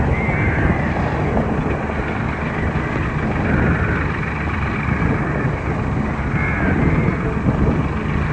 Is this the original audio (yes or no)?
yes